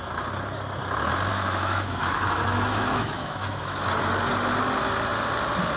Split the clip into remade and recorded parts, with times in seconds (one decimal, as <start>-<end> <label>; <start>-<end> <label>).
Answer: 0.0-1.3 recorded; 1.3-3.6 remade; 3.6-5.8 recorded